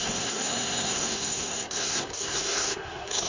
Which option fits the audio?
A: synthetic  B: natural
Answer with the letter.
A